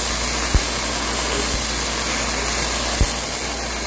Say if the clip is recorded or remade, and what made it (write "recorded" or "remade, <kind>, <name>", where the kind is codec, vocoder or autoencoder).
recorded